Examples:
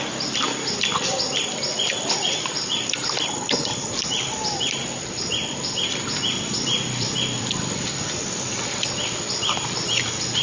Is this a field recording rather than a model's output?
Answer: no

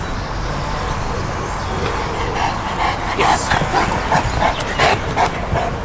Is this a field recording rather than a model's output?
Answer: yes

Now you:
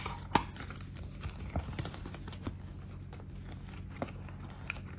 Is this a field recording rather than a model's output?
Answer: yes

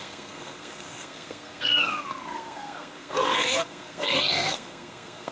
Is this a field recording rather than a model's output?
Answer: no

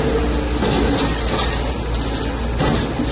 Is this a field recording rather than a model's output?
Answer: yes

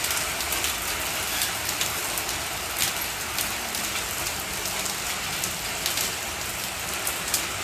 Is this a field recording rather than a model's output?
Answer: yes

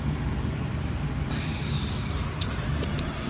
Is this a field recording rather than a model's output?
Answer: no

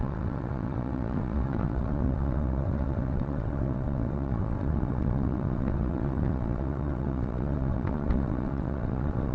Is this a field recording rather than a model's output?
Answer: no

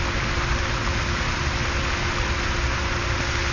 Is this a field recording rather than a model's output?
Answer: yes